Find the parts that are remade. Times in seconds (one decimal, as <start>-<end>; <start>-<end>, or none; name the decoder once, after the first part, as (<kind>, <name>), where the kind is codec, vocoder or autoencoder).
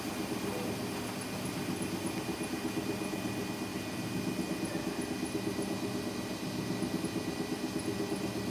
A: none